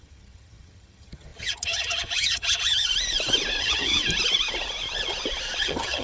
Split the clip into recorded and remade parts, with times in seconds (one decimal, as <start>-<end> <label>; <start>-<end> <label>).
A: 0.0-2.9 remade; 2.9-3.6 recorded; 3.6-4.0 remade; 4.0-5.6 recorded; 5.6-6.0 remade